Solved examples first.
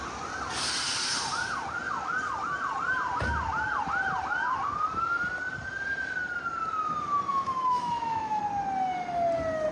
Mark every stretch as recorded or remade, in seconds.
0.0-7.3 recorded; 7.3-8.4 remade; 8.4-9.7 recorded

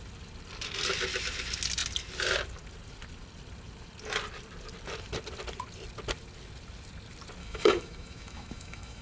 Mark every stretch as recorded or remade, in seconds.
0.0-7.4 recorded; 7.4-9.0 remade

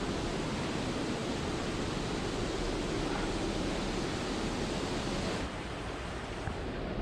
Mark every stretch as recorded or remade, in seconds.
0.0-7.0 recorded